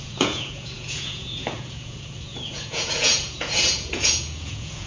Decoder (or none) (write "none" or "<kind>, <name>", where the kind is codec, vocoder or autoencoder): vocoder, Vocos